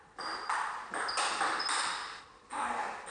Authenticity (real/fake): real